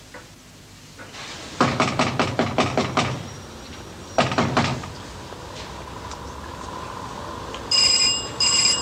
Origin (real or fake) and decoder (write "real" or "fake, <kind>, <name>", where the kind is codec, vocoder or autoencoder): real